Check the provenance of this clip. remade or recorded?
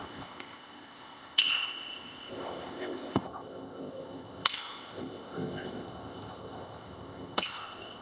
remade